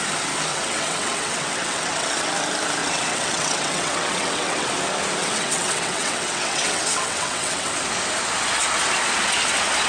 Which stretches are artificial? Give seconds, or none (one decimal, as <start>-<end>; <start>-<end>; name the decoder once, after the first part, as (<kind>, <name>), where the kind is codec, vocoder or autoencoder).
0.5-2.3 (vocoder, WaveNeXt); 2.8-4.7; 5.2-7.7